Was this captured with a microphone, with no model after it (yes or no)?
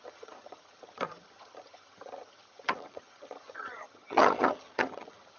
no